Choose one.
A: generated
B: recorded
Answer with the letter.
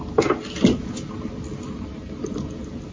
B